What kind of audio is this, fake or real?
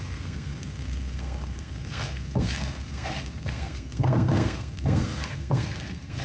fake